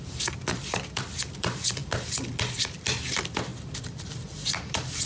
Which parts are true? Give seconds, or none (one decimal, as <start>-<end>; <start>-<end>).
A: none

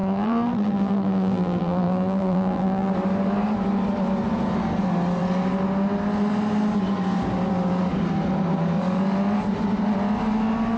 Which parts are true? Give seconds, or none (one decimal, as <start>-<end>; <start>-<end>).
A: 2.9-10.8